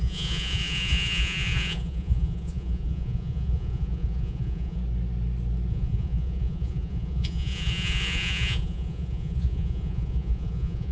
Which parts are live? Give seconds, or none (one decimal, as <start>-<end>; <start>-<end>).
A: 4.8-5.7